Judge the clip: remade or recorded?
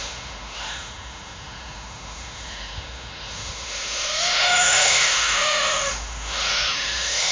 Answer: remade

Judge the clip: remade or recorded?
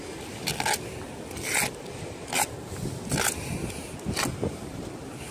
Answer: recorded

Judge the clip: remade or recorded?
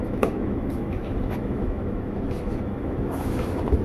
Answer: remade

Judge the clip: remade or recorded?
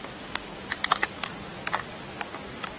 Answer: recorded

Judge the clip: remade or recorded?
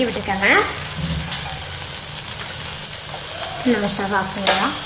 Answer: recorded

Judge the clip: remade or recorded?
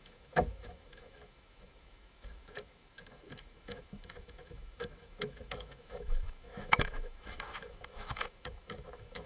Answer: remade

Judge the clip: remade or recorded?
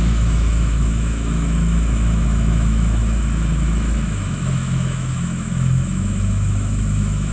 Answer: remade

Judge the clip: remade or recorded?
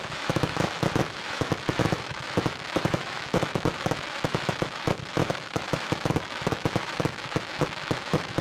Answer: remade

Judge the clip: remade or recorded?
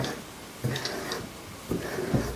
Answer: recorded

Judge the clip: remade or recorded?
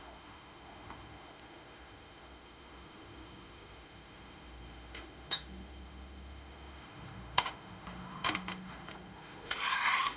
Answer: remade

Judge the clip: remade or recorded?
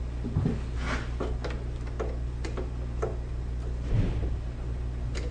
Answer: recorded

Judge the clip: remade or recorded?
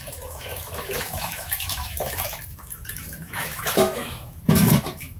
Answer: remade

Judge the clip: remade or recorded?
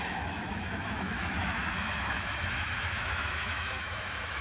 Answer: remade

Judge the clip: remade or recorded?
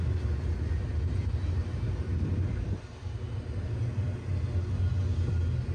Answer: recorded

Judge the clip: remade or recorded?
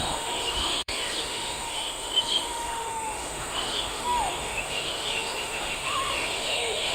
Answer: remade